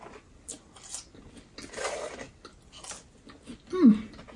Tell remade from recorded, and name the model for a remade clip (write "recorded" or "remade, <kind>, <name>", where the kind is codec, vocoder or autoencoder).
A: recorded